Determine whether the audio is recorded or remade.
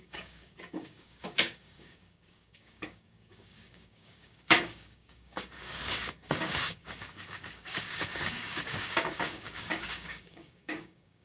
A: remade